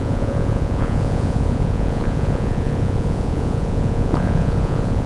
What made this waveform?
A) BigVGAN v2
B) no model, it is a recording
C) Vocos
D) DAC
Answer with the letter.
C